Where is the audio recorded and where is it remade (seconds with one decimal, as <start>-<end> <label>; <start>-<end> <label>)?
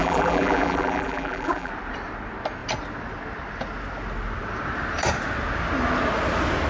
0.0-1.7 remade; 1.7-6.7 recorded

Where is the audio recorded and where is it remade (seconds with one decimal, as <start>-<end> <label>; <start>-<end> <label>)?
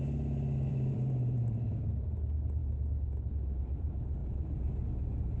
0.0-0.7 recorded; 0.7-1.9 remade; 1.9-4.2 recorded; 4.2-4.9 remade; 4.9-5.4 recorded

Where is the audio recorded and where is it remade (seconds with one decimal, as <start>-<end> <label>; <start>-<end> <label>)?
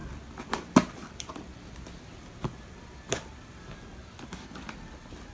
0.0-5.3 recorded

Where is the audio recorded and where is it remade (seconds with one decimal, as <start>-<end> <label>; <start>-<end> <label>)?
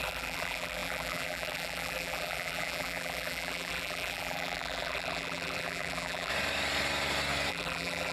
0.0-6.3 remade; 6.3-7.5 recorded; 7.5-8.1 remade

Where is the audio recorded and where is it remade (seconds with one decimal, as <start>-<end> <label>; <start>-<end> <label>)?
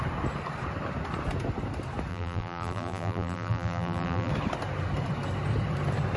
0.0-2.1 recorded; 2.1-4.3 remade; 4.3-6.2 recorded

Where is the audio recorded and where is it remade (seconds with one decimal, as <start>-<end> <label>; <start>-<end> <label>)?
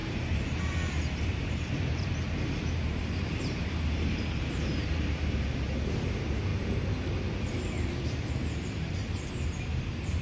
0.0-6.5 remade; 6.5-7.5 recorded; 7.5-10.2 remade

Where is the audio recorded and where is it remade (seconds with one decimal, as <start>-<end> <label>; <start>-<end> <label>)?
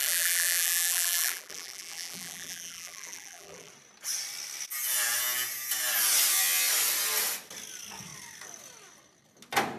0.0-3.7 remade; 3.7-9.8 recorded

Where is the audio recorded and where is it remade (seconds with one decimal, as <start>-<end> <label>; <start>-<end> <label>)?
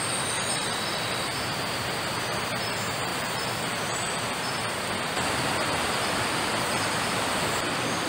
0.0-3.1 recorded; 3.1-4.1 remade; 4.1-8.1 recorded